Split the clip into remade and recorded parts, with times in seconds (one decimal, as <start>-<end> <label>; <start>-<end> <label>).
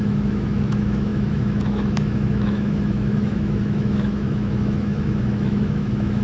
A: 0.0-6.2 remade